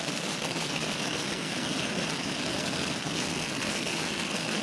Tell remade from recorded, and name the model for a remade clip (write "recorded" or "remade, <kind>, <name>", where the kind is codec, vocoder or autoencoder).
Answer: remade, codec, SNAC